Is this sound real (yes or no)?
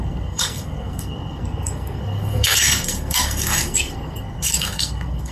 no